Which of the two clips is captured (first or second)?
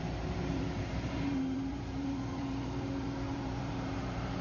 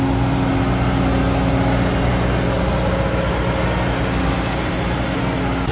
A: second